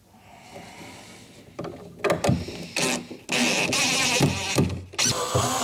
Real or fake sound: real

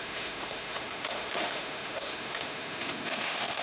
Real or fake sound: fake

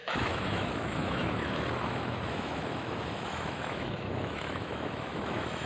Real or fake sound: fake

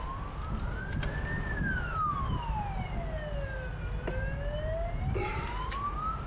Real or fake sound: real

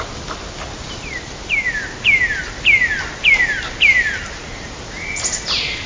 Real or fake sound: real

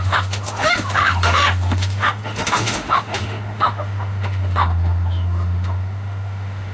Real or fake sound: fake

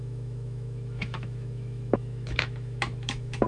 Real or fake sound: fake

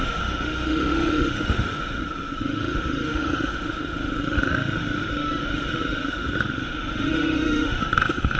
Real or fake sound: fake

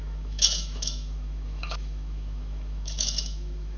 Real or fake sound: fake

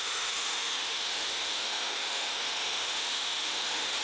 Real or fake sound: fake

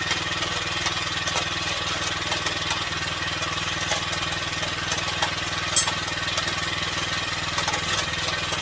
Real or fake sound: real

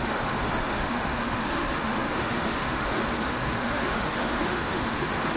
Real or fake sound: fake